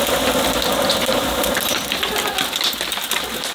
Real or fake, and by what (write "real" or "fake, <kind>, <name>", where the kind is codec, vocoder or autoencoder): real